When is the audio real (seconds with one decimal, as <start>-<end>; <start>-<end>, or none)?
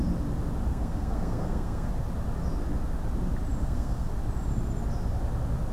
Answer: 0.0-0.7; 1.9-3.6; 4.1-5.7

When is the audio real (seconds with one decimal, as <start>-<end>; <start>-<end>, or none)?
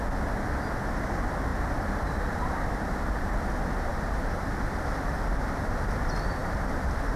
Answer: 0.0-1.5; 2.5-3.9; 4.5-7.2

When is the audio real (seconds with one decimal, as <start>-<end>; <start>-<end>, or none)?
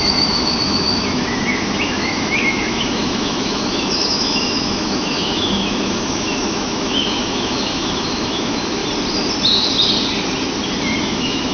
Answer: 8.8-11.0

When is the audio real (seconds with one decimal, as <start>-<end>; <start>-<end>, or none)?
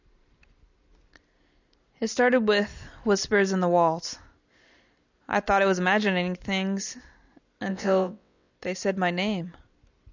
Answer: 0.0-7.7; 8.5-10.1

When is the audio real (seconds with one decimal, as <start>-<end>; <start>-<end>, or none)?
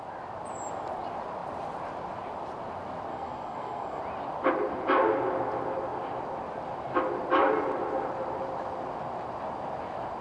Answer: 0.0-3.1; 4.0-10.2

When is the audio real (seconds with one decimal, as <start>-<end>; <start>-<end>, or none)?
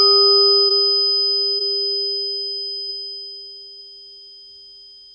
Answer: 0.0-5.1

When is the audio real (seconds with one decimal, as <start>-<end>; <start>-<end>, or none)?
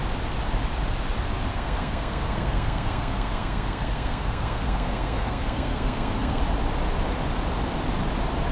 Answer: 0.0-1.5; 6.4-8.5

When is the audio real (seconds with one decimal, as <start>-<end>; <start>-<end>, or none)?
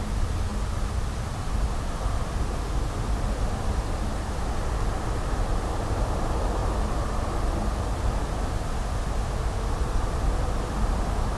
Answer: 0.0-11.4